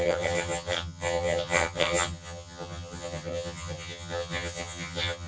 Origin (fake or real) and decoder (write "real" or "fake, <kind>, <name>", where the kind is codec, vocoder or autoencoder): fake, vocoder, HiFi-GAN